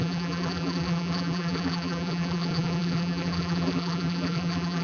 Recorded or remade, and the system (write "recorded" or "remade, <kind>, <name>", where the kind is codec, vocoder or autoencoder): remade, vocoder, BigVGAN v2